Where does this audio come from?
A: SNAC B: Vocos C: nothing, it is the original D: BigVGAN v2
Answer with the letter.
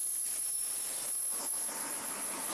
C